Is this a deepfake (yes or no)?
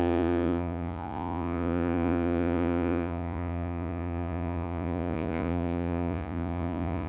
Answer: yes